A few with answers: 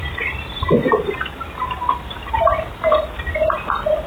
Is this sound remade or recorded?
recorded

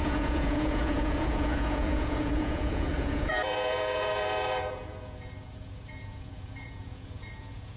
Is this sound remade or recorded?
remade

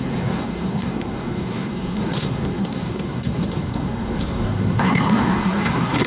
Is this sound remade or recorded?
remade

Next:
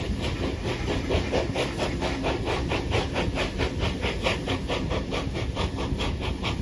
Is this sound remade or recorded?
recorded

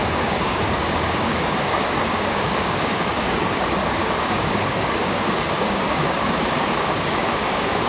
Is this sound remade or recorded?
remade